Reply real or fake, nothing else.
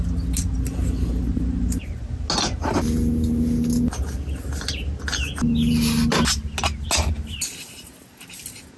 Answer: real